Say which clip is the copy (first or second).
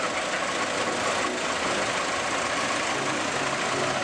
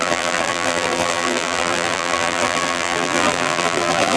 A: second